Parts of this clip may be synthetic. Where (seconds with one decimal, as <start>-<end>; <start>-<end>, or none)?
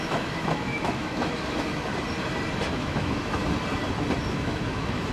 0.0-1.9; 2.7-3.4; 4.3-5.1